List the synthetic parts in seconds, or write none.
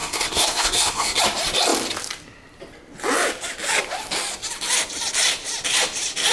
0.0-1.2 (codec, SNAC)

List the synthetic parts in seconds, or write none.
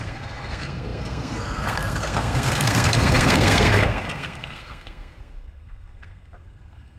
0.0-7.0 (codec, SNAC)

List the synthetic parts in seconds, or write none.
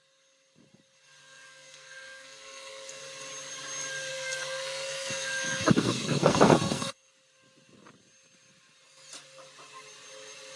1.2-3.0 (codec, SNAC); 4.1-7.1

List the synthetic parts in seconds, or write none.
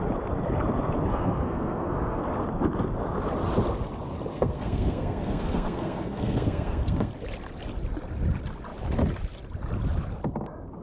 1.1-2.2 (codec, SNAC); 4.3-7.1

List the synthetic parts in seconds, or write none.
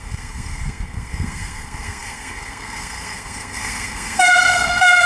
0.0-5.1 (codec, SNAC)